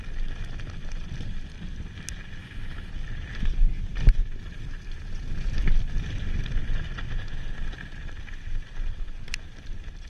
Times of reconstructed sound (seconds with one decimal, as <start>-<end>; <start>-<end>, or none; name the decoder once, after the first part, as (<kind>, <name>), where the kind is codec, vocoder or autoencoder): 2.4-2.9 (autoencoder, DAC-VAE)